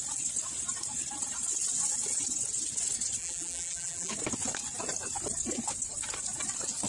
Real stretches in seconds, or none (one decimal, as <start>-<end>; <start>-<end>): 0.0-3.2; 4.1-6.9

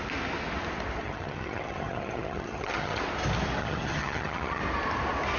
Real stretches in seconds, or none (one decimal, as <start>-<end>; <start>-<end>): 0.0-1.0; 3.0-3.6; 4.6-5.4

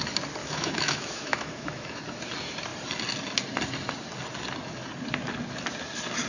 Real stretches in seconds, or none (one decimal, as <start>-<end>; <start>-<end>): 0.0-0.4; 2.0-6.3

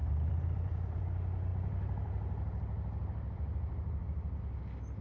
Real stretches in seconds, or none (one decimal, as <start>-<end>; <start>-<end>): 1.0-1.5; 4.4-5.0

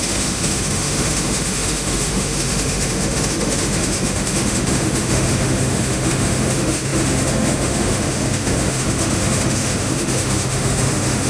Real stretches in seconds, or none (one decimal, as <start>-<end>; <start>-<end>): none

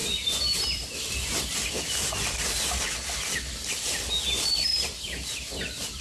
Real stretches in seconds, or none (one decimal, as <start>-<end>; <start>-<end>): 3.6-6.0